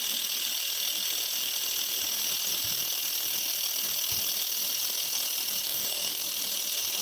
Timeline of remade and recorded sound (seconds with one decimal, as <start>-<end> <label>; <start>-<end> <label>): 0.0-5.6 recorded; 5.6-6.2 remade; 6.2-7.0 recorded

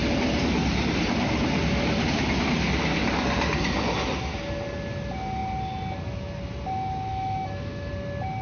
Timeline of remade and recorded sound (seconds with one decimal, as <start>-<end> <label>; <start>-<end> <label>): 0.0-7.1 recorded; 7.1-7.9 remade; 7.9-8.4 recorded

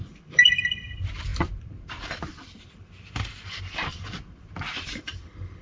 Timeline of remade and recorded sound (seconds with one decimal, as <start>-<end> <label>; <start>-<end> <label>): 0.0-5.6 remade